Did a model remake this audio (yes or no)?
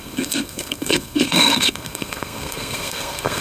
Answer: yes